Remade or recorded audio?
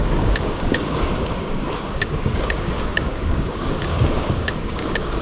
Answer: remade